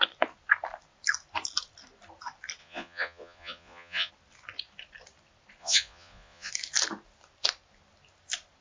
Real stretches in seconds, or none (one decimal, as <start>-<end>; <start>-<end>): 0.0-2.6; 4.1-5.6; 6.5-8.6